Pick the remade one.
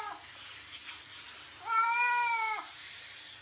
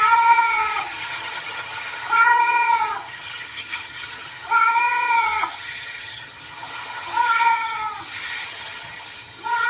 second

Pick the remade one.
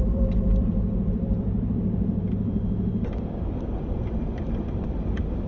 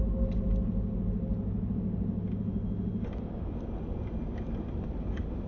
first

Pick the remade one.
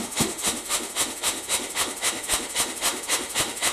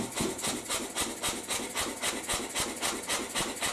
first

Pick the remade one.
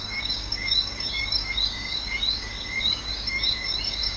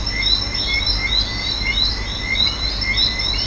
first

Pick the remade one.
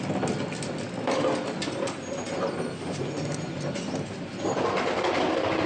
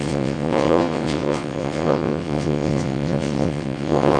second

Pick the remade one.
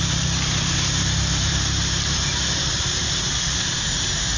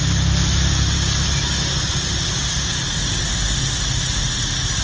first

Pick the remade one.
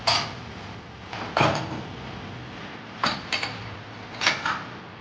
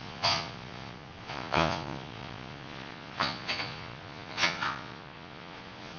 second